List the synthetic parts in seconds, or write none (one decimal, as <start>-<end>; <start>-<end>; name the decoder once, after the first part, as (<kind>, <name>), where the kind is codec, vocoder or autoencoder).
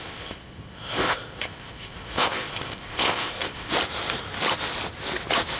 0.0-3.7 (codec, ZipCodec)